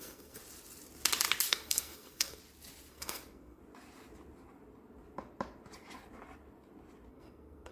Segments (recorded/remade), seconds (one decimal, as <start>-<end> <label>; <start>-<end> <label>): 0.0-0.4 remade; 0.4-1.5 recorded; 1.5-2.4 remade; 2.4-2.9 recorded; 2.9-3.6 remade; 3.6-7.1 recorded; 7.1-7.7 remade